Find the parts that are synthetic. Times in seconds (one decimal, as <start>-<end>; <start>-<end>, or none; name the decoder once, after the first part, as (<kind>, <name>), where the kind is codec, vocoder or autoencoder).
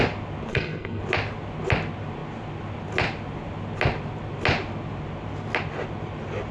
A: 0.5-1.0 (codec, SNAC)